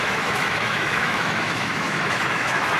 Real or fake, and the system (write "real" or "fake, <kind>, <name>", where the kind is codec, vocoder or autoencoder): fake, autoencoder, DAC-VAE